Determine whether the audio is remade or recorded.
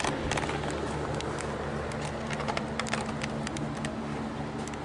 recorded